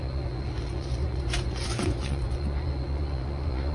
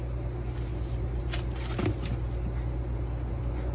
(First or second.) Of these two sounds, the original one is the second